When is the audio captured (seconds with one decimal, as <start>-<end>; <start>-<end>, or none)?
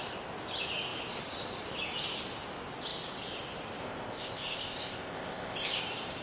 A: 0.0-3.8; 5.8-6.2